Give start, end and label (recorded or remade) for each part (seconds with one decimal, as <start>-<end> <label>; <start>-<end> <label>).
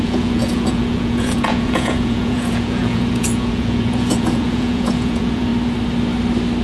0.0-5.5 remade; 5.5-6.6 recorded